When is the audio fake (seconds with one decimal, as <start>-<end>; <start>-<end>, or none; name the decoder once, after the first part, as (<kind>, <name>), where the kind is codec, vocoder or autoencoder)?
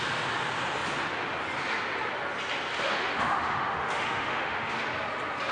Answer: 2.7-4.8 (autoencoder, DAC-VAE)